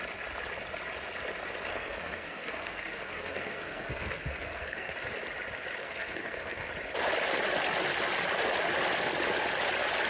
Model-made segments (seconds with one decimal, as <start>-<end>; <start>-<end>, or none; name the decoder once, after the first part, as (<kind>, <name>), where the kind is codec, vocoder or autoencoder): 1.7-4.9 (codec, SNAC); 5.8-6.7